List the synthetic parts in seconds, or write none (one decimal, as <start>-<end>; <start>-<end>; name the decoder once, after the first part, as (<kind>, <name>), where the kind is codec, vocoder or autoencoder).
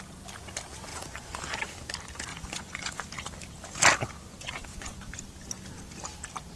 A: 0.9-1.4 (vocoder, Vocos); 2.3-3.0; 4.7-5.2